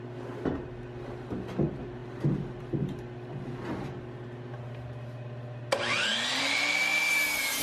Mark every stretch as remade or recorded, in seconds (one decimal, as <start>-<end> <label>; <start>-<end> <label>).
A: 0.0-7.6 recorded